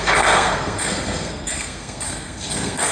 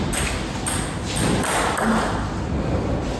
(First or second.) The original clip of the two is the second